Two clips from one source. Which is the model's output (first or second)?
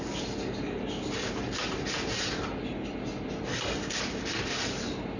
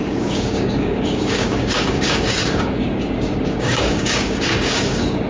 second